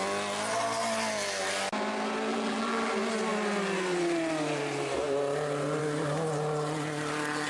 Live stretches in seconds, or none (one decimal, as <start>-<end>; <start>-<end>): 0.0-2.3; 2.9-7.5